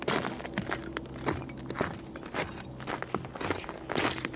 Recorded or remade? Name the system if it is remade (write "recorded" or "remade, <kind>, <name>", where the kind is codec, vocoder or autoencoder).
recorded